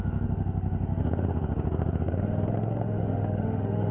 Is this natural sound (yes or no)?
no